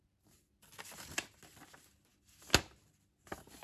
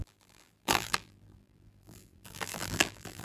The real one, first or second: first